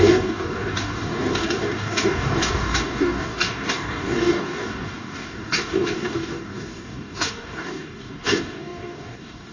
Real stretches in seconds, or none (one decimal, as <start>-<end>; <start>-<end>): none